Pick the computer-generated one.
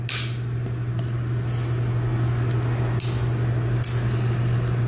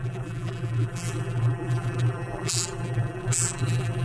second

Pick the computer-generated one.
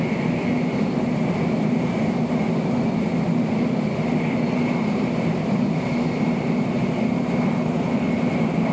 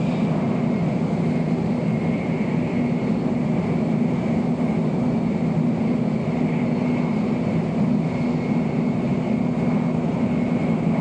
first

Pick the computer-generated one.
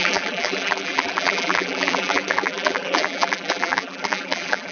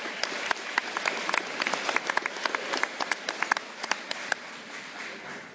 first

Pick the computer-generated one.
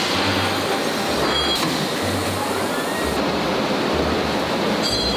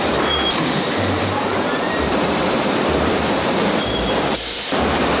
second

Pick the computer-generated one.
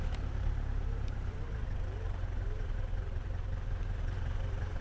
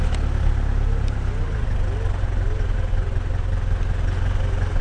first